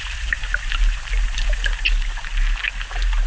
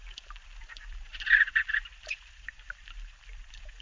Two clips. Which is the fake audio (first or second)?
second